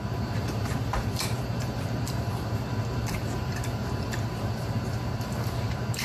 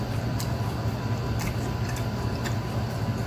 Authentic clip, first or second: second